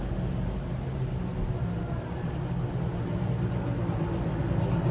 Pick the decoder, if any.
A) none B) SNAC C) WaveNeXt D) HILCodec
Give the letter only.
A